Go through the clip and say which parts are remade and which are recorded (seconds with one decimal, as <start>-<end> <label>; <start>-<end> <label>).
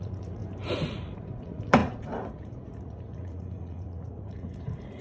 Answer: 0.0-0.4 remade; 0.4-0.9 recorded; 0.9-5.0 remade